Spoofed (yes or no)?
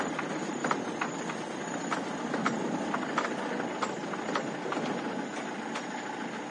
no